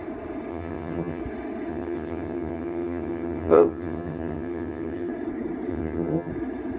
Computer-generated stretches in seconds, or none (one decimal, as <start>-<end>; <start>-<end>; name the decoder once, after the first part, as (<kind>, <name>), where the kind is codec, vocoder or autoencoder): 0.5-1.2 (vocoder, HiFi-GAN); 1.7-5.1; 5.7-6.3